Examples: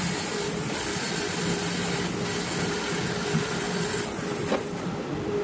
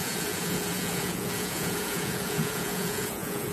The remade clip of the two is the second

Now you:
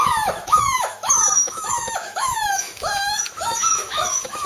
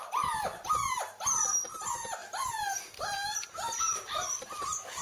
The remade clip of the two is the first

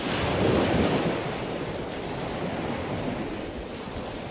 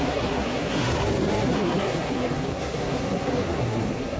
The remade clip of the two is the second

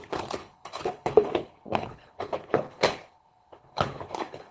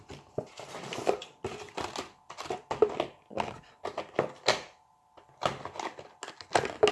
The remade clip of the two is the first